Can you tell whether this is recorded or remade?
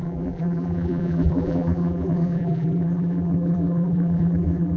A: remade